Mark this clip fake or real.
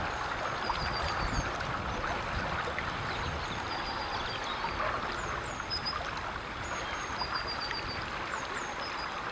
real